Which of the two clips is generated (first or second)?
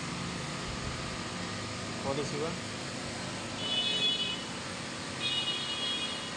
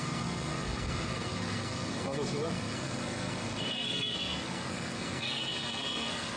second